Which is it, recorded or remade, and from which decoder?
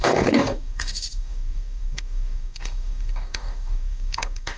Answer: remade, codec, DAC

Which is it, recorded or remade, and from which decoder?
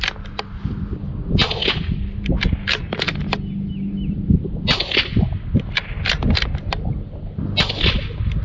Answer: recorded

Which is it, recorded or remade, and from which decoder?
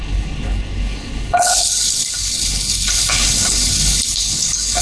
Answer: remade, codec, HILCodec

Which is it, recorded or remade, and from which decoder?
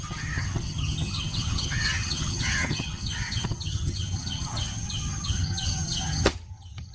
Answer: remade, vocoder, HiFi-GAN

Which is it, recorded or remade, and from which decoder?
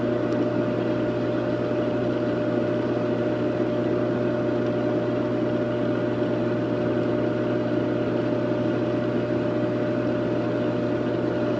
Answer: recorded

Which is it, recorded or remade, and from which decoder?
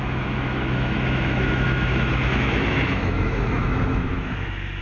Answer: remade, autoencoder, DAC-VAE